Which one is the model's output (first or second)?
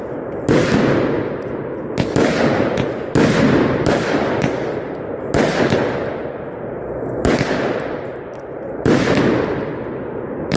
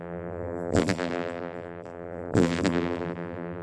second